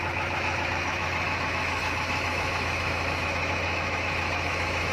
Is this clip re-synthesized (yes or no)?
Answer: yes